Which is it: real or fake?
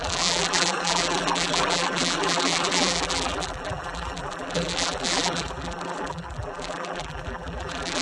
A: fake